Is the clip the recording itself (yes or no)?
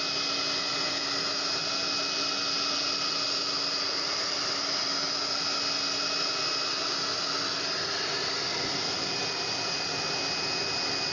yes